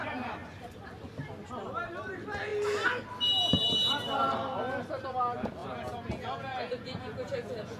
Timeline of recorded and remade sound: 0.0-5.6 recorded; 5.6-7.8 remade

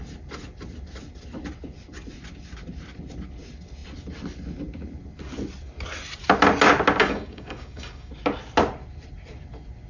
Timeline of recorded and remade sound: 0.0-7.0 recorded; 7.0-8.1 remade; 8.1-9.9 recorded

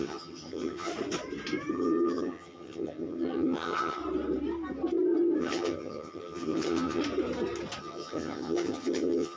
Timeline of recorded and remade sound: 0.0-0.9 remade; 0.9-1.7 recorded; 1.7-4.0 remade; 4.0-5.4 recorded; 5.4-7.0 remade; 7.0-7.8 recorded; 7.8-9.4 remade

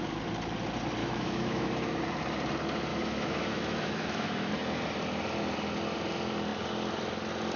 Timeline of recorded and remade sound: 0.0-1.0 recorded; 1.0-2.0 remade; 2.0-2.9 recorded; 2.9-4.5 remade; 4.5-7.6 recorded

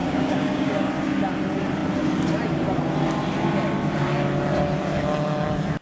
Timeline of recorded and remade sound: 0.0-0.9 remade; 0.9-5.8 recorded